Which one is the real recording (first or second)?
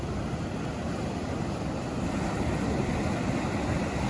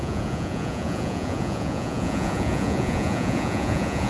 first